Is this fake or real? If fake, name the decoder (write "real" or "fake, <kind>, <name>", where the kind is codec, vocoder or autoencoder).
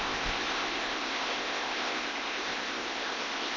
fake, codec, ZipCodec